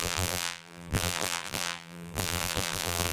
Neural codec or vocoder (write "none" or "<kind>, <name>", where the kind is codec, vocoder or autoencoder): vocoder, BigVGAN v2